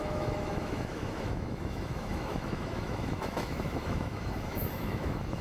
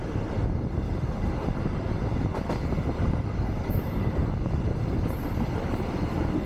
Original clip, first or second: second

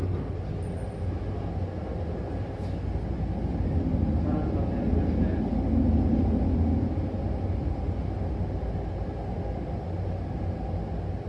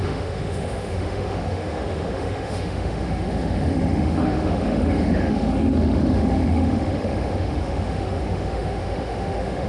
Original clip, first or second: first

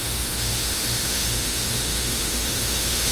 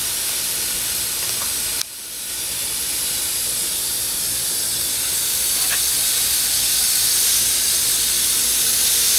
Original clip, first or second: second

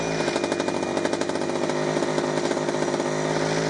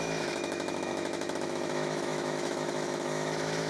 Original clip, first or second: first